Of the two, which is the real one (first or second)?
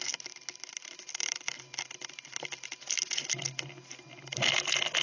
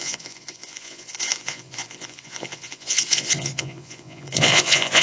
first